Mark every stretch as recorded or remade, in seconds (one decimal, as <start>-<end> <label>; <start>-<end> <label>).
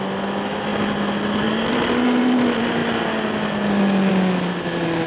0.0-5.1 recorded